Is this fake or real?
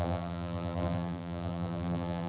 fake